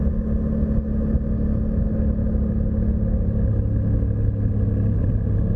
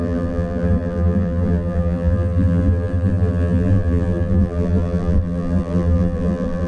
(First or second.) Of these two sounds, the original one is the first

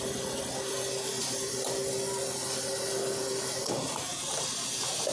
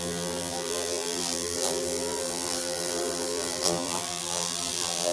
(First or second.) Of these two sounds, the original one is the first